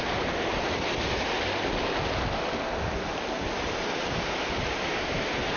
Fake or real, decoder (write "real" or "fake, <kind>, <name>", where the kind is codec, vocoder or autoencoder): real